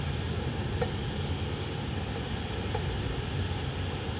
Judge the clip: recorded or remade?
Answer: recorded